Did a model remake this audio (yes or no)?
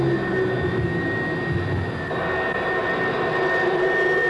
no